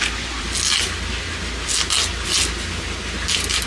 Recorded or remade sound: recorded